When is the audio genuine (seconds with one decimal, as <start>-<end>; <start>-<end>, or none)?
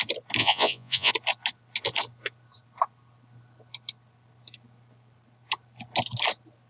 0.0-0.4; 1.1-6.7